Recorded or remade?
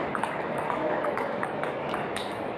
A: remade